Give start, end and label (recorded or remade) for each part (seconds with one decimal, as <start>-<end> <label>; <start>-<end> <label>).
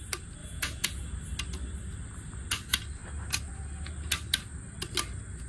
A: 0.0-0.4 recorded; 0.4-1.1 remade; 1.1-5.5 recorded